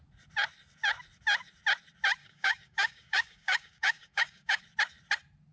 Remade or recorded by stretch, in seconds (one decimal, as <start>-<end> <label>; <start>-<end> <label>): 0.0-2.2 recorded; 2.2-4.6 remade; 4.6-5.5 recorded